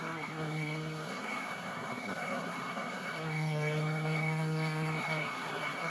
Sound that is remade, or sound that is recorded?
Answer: remade